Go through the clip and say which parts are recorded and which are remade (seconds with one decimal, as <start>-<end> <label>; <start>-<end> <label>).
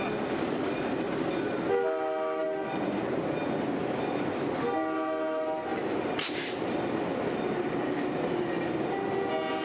0.0-9.6 recorded